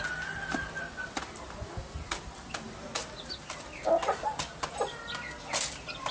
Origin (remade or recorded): recorded